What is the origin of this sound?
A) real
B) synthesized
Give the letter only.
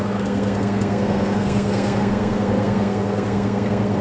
B